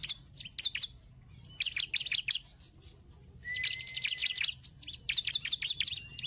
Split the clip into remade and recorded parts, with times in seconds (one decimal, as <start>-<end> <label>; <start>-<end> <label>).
0.0-6.3 recorded